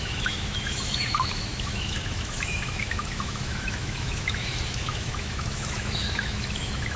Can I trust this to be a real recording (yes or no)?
no